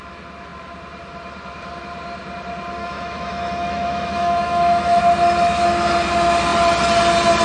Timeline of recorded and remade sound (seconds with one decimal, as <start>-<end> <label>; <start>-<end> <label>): 0.0-2.8 recorded; 2.8-5.0 remade; 5.0-7.4 recorded